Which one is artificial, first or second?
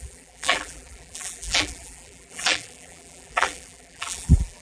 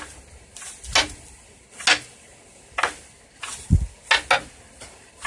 first